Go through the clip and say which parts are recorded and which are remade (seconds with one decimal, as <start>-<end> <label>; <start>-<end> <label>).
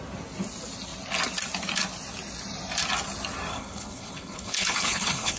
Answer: 0.0-3.5 recorded; 3.5-5.4 remade